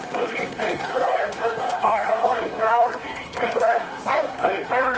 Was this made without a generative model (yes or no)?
no